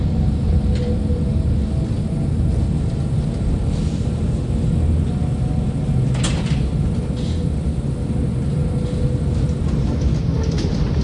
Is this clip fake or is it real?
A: real